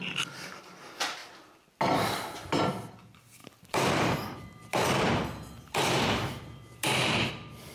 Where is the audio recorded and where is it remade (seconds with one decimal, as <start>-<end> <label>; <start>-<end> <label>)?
0.0-3.4 recorded; 3.4-7.3 remade; 7.3-7.7 recorded